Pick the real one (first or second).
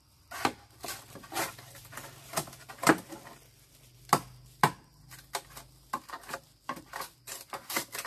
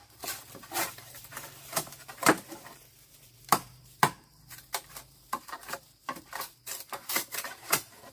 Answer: first